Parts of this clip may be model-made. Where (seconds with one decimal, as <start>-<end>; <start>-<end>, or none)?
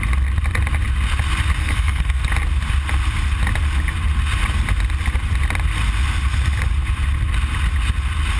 1.6-2.2